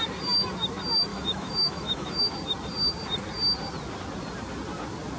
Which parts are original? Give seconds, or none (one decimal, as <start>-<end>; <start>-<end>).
0.0-1.1; 2.2-5.2